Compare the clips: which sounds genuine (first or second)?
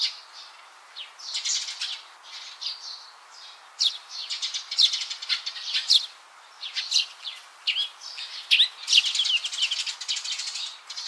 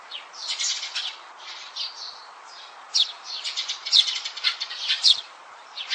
first